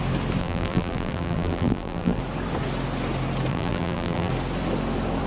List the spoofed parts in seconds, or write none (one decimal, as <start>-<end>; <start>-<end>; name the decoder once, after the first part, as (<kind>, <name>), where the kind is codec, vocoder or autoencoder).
0.4-2.2 (vocoder, BigVGAN v2); 3.5-4.3